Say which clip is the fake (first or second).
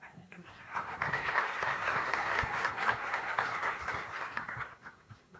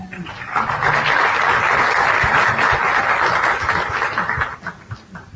first